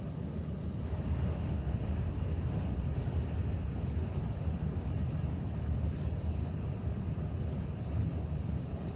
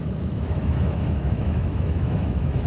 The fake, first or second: second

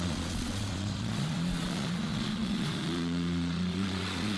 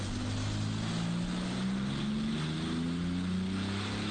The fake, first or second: first